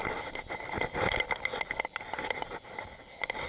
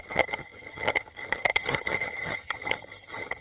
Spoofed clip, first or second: second